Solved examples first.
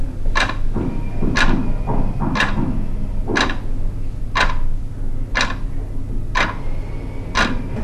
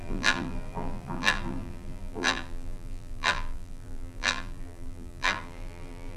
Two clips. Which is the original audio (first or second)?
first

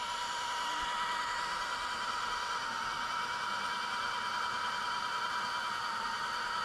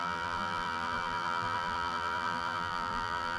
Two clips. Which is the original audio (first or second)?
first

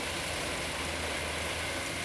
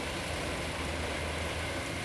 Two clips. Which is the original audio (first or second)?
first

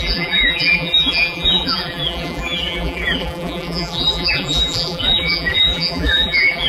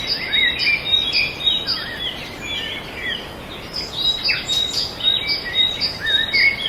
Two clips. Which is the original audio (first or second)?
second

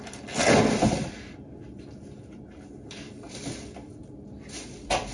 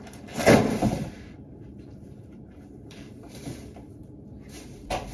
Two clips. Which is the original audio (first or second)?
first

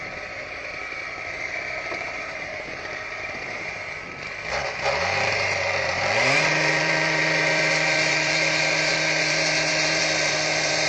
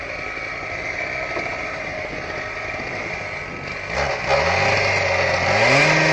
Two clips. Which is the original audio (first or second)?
second